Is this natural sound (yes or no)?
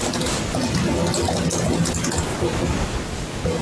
yes